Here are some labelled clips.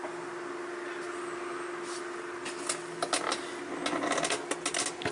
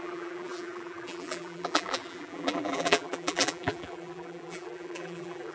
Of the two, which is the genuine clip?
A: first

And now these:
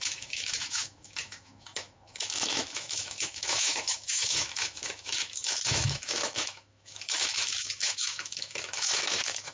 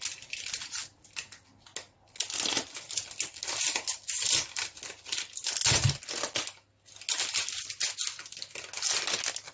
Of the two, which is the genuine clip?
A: second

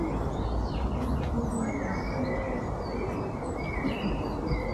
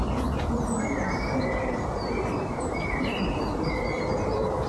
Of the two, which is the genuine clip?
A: first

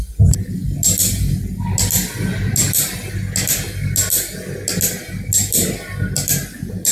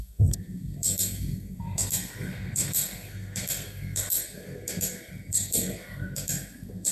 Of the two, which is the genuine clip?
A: first